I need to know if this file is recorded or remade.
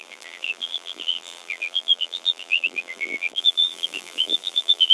remade